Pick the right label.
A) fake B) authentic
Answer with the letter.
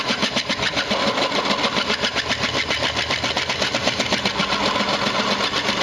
B